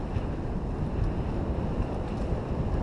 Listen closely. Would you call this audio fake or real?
real